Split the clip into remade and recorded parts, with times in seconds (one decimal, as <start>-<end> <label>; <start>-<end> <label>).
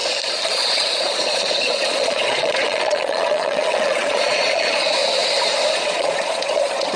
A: 0.0-0.5 recorded; 0.5-5.0 remade; 5.0-5.7 recorded; 5.7-7.0 remade